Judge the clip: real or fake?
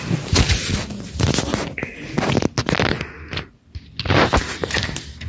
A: real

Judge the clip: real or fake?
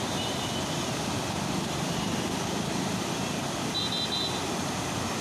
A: real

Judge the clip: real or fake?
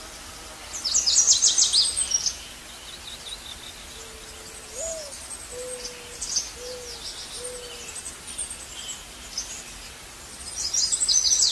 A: real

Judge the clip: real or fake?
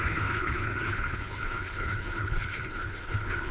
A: fake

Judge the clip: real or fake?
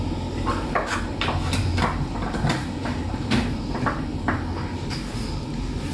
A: real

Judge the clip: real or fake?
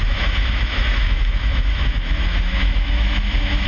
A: fake